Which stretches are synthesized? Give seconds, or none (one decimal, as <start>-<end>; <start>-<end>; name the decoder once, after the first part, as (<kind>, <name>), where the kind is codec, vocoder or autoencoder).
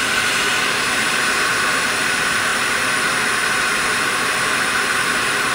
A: 0.0-2.5 (vocoder, BigVGAN v2); 5.0-5.5